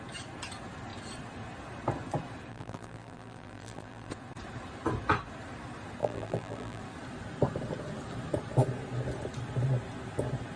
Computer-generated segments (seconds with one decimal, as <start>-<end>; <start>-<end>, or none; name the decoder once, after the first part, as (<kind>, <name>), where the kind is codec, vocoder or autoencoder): 2.5-4.1 (vocoder, BigVGAN v2); 6.0-6.8